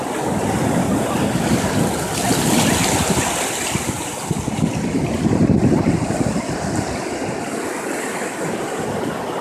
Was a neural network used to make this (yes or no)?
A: no